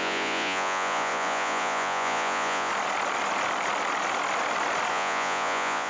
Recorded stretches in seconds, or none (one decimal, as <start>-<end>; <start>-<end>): 2.7-4.9

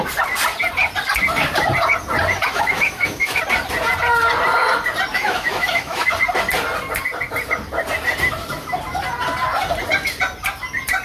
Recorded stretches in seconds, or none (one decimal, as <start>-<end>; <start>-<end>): 0.0-2.4; 3.4-5.1; 6.1-11.0

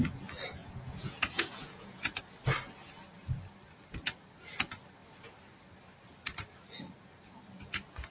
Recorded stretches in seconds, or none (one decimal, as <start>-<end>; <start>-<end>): 0.0-0.6; 2.2-8.1

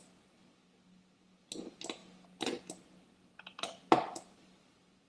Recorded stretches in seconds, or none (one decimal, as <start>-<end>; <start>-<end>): 0.0-5.1